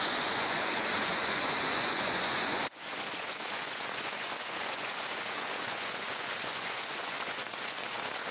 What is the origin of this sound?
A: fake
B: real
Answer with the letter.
A